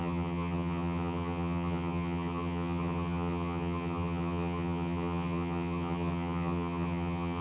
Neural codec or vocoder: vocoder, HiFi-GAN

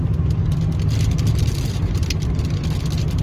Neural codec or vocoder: none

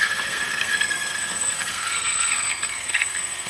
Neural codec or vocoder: codec, SNAC